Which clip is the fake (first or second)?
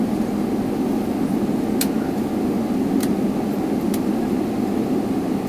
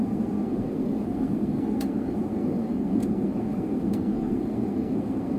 second